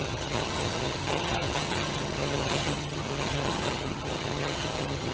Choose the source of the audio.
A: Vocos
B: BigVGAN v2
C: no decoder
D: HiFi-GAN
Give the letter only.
D